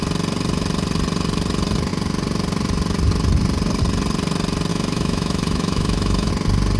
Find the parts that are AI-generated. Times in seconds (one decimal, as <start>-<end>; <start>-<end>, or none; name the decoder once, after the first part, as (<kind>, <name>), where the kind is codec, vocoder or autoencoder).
4.7-6.3 (autoencoder, DAC-VAE)